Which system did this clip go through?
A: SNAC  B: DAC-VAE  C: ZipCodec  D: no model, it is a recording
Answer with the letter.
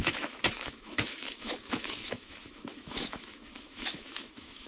B